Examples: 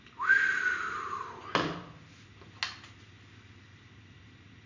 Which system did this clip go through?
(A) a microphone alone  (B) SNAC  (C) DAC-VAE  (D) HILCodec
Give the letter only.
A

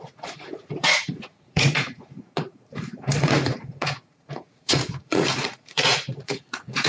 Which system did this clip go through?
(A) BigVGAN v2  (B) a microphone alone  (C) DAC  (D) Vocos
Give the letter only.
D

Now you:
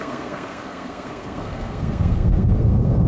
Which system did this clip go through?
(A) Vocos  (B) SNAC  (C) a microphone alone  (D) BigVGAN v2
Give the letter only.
B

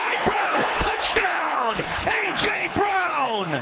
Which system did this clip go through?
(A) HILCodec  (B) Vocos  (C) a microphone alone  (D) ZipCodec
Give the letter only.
A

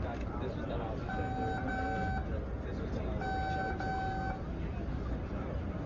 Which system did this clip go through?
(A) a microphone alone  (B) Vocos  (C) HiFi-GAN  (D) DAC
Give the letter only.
A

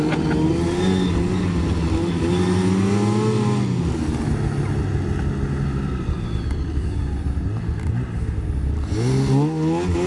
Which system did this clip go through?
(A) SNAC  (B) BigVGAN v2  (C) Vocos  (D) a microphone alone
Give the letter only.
D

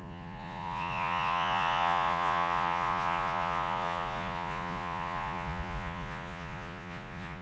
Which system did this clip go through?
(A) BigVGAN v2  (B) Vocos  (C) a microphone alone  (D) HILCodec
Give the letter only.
B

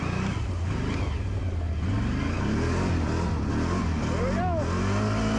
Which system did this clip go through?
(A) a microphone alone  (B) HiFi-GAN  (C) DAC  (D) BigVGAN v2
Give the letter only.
A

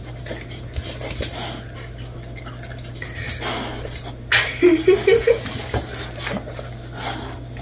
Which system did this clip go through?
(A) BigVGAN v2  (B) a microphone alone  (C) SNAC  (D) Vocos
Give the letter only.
B